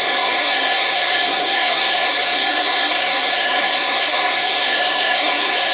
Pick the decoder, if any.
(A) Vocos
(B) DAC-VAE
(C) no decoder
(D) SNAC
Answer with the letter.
D